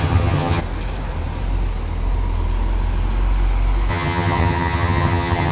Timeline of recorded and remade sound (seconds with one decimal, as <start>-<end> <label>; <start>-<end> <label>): 0.0-0.6 remade; 0.6-3.9 recorded; 3.9-5.5 remade